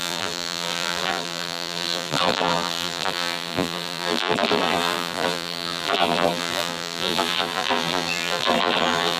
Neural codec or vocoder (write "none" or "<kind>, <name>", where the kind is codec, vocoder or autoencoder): vocoder, BigVGAN v2